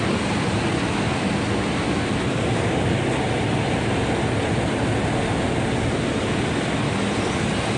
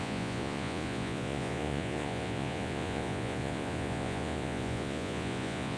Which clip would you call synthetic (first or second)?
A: second